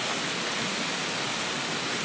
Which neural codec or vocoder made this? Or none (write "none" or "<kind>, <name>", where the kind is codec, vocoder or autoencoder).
none